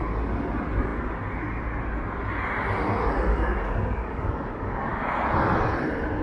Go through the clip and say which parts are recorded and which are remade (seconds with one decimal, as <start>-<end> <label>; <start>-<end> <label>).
0.0-3.3 recorded; 3.3-5.1 remade; 5.1-6.2 recorded